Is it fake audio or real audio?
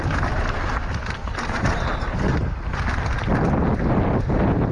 real